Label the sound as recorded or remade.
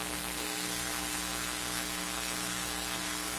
remade